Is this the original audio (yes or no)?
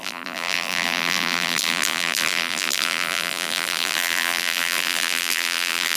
no